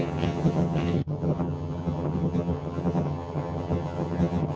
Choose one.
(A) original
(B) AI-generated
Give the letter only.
B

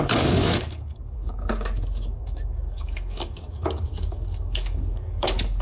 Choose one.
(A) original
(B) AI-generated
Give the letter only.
B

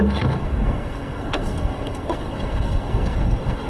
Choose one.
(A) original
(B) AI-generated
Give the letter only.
B